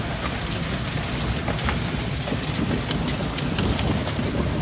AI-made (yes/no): no